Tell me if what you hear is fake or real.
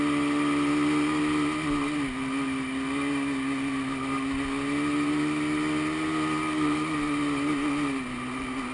real